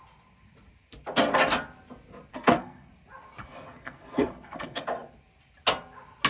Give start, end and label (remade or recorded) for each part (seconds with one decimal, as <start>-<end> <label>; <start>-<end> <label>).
0.0-2.3 recorded; 2.3-2.9 remade; 2.9-3.4 recorded; 3.4-4.8 remade; 4.8-6.3 recorded